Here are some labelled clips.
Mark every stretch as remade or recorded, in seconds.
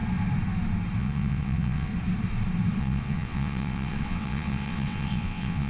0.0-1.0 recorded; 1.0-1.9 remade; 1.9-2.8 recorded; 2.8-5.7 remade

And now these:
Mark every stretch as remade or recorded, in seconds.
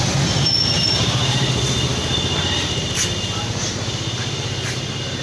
0.0-5.2 recorded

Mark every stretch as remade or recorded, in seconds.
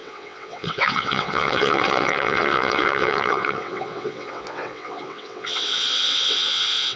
0.0-7.0 remade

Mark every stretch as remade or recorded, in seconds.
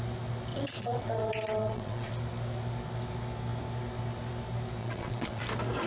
0.0-0.5 recorded; 0.5-2.1 remade; 2.1-4.8 recorded; 4.8-5.4 remade; 5.4-5.9 recorded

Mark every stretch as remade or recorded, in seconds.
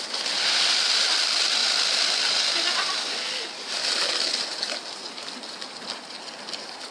0.0-6.9 recorded